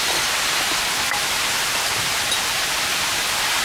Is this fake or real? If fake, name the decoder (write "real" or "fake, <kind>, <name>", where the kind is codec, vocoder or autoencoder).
real